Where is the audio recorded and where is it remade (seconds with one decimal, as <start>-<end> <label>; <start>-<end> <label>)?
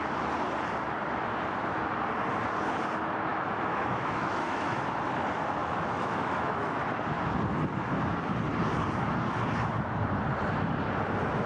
0.0-3.3 recorded; 3.3-4.9 remade; 4.9-5.6 recorded; 5.6-6.8 remade; 6.8-11.5 recorded